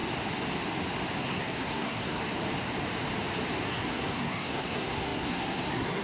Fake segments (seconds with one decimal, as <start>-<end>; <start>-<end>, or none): 1.2-2.2; 3.7-6.0